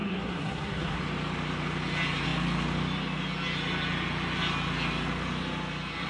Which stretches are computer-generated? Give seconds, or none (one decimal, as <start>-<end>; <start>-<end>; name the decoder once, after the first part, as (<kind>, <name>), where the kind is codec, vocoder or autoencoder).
0.0-1.0 (codec, SNAC)